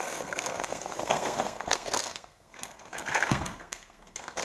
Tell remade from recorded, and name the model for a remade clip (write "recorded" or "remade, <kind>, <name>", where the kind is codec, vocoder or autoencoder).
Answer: remade, codec, SNAC